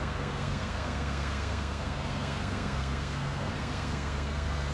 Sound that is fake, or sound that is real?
fake